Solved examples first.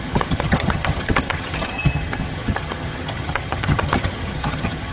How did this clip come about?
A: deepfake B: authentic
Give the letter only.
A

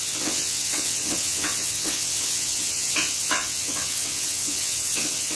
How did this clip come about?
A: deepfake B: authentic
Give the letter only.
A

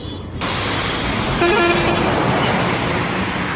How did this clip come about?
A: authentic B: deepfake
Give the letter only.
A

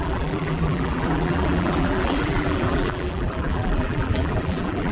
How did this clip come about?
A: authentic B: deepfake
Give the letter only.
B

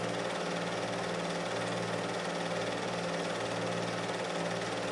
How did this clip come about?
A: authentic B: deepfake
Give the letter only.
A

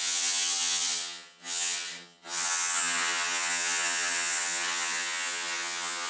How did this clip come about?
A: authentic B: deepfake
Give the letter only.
B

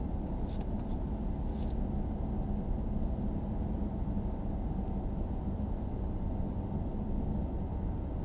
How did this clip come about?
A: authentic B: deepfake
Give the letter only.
A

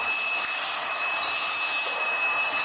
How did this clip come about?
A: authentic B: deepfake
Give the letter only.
A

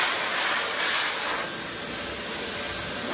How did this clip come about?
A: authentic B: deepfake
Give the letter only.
A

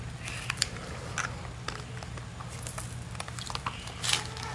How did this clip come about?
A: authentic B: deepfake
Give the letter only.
A